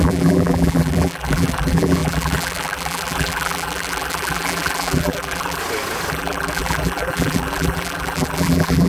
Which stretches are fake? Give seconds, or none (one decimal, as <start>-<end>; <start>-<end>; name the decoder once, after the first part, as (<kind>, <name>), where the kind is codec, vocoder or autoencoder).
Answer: 0.0-5.6 (vocoder, BigVGAN v2); 6.1-8.9